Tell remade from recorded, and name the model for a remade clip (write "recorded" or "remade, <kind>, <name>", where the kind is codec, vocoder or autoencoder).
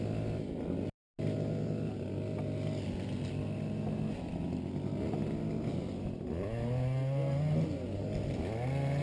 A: recorded